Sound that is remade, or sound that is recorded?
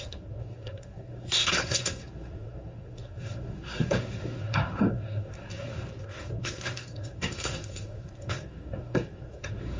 remade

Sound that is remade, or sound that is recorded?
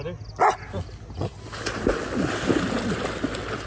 recorded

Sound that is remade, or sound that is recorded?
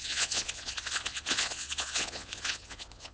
remade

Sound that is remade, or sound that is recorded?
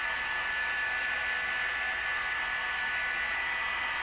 recorded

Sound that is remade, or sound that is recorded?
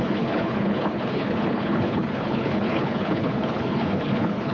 remade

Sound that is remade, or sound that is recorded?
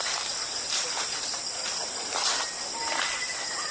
recorded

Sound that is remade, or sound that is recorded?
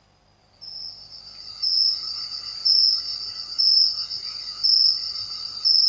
recorded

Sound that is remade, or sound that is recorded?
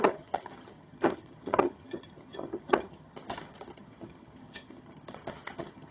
remade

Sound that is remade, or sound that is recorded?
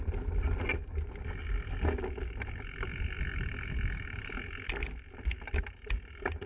recorded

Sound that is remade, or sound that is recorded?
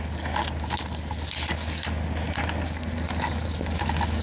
recorded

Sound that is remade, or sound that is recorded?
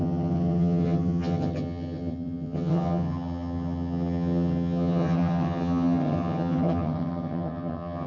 remade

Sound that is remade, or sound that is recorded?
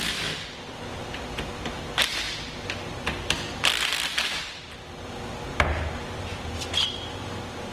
recorded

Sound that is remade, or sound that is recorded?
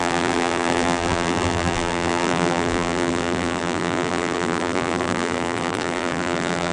remade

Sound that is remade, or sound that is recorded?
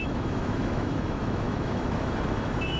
remade